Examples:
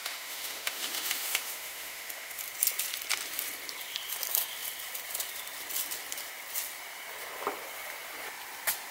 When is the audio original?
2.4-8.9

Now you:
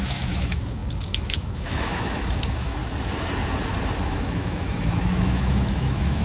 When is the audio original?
2.8-4.0

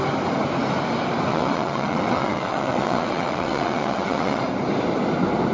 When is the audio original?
0.0-1.3; 4.4-5.5

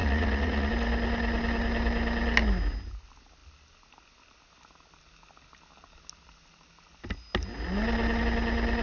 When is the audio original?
0.7-8.8